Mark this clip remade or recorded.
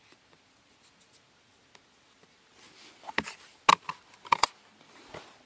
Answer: recorded